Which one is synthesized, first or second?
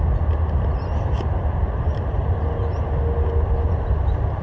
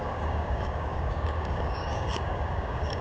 second